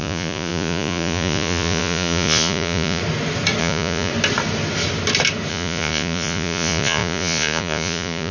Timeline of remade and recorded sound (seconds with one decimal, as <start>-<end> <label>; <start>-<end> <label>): 0.0-3.0 remade; 3.0-3.6 recorded; 3.6-4.1 remade; 4.1-5.5 recorded; 5.5-8.3 remade